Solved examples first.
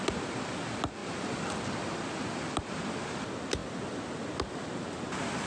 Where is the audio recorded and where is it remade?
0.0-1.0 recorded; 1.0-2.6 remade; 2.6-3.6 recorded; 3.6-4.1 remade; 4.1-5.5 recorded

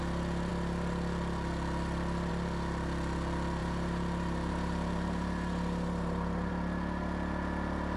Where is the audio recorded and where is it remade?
0.0-3.6 recorded; 3.6-6.5 remade; 6.5-8.0 recorded

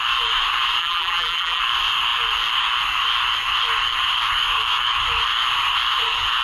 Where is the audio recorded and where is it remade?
0.0-0.8 recorded; 0.8-1.6 remade; 1.6-6.4 recorded

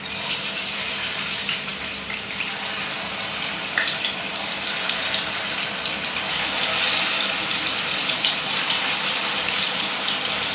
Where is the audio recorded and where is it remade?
0.0-10.5 remade